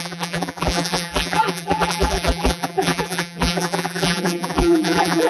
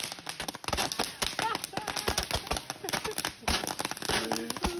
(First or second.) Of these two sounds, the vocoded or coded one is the first